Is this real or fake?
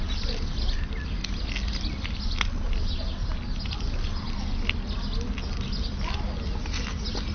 real